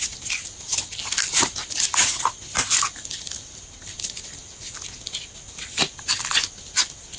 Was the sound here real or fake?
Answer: real